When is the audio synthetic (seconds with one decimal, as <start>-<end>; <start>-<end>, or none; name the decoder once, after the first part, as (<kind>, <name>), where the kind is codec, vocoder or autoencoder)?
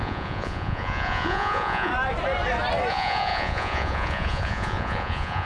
0.0-1.9 (vocoder, Vocos); 2.9-5.4